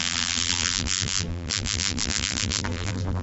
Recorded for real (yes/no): no